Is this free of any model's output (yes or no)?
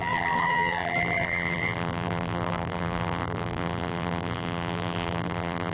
no